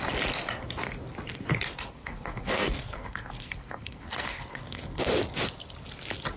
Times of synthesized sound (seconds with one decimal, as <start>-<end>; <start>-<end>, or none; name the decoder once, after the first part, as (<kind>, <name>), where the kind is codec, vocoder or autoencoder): 2.0-5.0 (codec, SNAC)

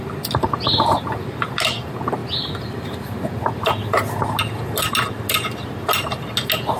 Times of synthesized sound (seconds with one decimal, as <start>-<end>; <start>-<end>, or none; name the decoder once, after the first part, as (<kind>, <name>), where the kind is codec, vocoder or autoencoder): 2.2-3.5 (vocoder, BigVGAN v2)